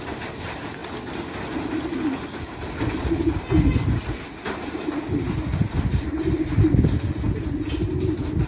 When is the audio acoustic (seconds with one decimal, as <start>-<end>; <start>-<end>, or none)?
0.0-8.5